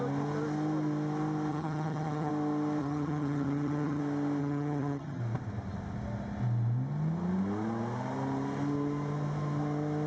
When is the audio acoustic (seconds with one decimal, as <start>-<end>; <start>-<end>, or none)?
0.0-1.5; 2.3-2.8; 4.0-4.4; 5.2-10.1